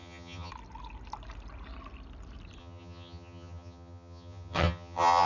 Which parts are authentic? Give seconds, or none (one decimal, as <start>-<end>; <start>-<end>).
0.5-2.6